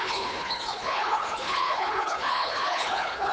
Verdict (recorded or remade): remade